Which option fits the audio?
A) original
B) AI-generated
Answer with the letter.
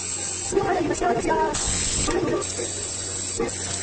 B